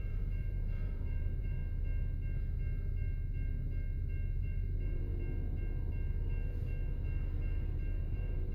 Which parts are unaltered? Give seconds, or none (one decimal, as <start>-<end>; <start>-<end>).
1.6-4.4; 5.1-8.1